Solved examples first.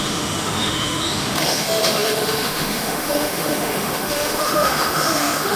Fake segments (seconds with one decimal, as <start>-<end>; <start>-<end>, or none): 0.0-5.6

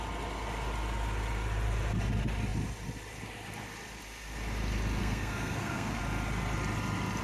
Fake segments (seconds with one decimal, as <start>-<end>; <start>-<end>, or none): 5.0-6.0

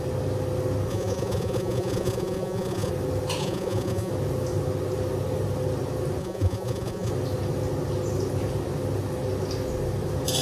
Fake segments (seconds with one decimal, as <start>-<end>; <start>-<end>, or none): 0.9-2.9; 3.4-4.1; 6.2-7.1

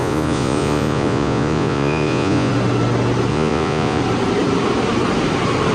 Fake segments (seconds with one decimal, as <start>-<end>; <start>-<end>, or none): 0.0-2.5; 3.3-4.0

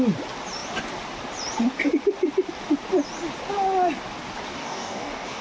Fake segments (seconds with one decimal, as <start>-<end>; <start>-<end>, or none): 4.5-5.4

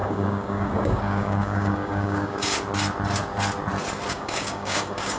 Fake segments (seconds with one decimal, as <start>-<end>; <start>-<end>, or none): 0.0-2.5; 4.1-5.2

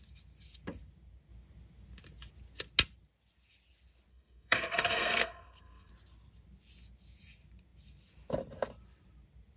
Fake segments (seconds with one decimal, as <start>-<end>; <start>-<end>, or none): 4.1-5.9

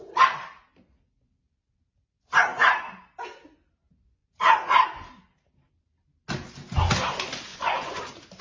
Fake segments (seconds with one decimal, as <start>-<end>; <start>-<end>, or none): 7.5-8.0